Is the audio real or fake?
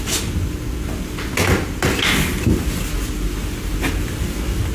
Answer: real